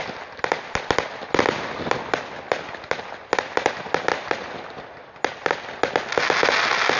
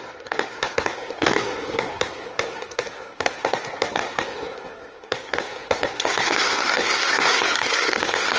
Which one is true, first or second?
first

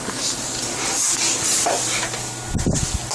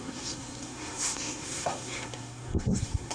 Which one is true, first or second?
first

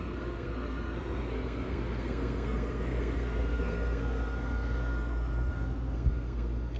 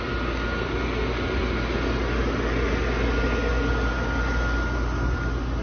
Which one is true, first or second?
second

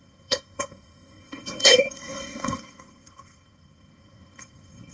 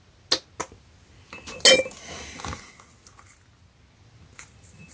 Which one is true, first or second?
second